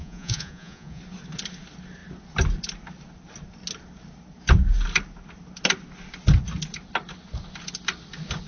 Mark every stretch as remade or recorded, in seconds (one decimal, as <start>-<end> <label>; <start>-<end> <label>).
0.0-1.0 remade; 1.0-8.5 recorded